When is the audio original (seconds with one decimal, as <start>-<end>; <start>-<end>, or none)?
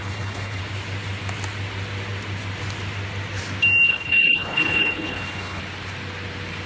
0.6-3.9; 5.6-6.7